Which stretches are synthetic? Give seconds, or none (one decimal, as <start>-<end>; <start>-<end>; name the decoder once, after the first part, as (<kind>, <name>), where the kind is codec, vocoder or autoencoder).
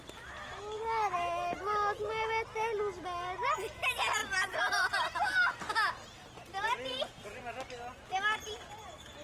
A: 4.2-5.6 (vocoder, BigVGAN v2)